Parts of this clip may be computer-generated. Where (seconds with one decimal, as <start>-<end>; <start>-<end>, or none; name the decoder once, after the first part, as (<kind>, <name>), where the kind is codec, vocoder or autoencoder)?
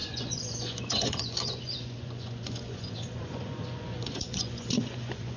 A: 0.0-5.4 (vocoder, Vocos)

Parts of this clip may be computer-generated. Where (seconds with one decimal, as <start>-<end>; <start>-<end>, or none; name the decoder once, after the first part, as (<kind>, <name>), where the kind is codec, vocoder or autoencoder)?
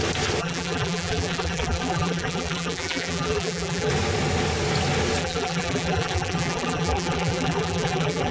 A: 0.4-3.9 (vocoder, BigVGAN v2); 5.2-8.3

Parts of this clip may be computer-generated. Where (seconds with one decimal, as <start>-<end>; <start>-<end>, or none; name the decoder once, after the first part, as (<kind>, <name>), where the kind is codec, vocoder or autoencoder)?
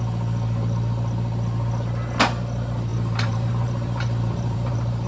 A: 2.9-5.1 (vocoder, BigVGAN v2)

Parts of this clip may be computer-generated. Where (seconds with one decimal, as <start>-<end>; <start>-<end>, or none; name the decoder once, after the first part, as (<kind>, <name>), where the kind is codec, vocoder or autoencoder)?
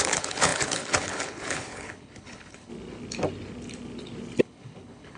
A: 0.0-2.7 (codec, HILCodec); 4.4-5.2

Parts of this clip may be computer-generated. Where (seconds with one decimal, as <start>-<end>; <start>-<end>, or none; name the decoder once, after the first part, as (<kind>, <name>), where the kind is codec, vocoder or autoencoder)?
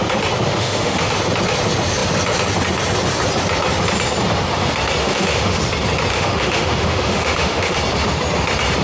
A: 0.5-1.1 (autoencoder, DAC-VAE); 5.0-5.6; 6.1-7.8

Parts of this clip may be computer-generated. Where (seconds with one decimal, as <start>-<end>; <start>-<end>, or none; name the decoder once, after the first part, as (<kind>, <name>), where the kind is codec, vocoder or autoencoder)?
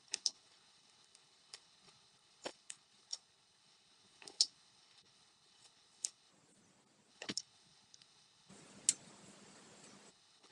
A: 0.0-6.3 (codec, HILCodec); 7.1-8.5; 10.1-10.5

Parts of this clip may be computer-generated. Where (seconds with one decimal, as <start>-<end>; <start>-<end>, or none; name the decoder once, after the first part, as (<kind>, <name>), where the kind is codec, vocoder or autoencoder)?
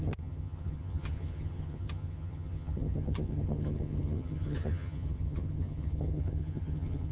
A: 0.0-7.1 (vocoder, HiFi-GAN)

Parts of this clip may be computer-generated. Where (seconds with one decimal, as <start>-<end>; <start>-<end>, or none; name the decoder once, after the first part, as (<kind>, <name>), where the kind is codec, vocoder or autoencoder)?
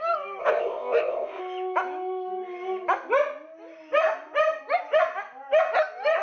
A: 0.4-1.4 (codec, ZipCodec)